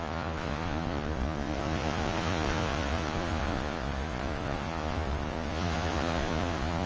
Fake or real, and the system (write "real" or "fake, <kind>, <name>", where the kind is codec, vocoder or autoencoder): fake, vocoder, Vocos